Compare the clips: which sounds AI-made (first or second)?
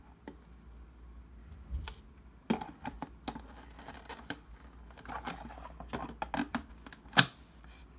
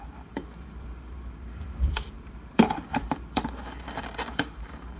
second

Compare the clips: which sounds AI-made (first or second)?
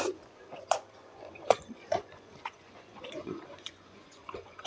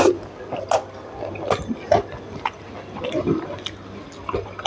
first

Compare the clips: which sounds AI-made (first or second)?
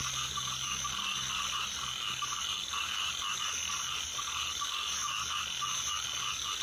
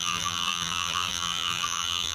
second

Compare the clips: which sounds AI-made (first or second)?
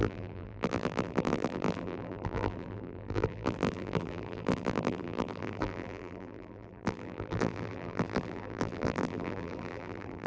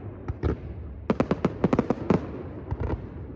first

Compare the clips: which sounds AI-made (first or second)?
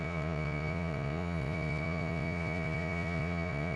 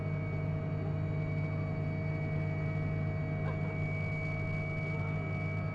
first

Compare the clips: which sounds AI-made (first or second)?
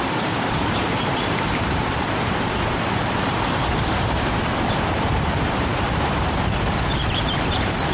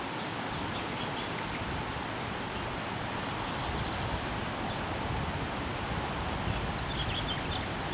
first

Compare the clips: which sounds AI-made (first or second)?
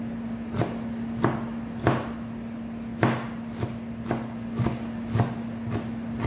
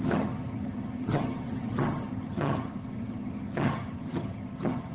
second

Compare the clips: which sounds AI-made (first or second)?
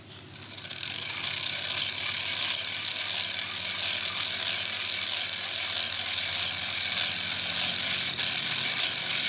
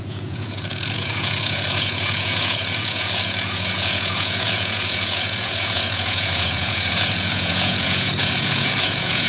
second